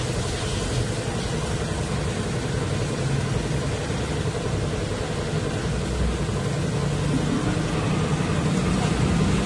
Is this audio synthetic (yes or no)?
no